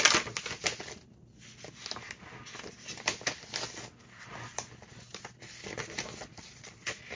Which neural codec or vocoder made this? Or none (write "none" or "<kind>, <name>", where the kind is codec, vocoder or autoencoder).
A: none